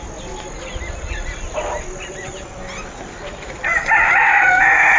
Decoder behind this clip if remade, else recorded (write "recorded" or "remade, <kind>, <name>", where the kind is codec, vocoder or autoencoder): recorded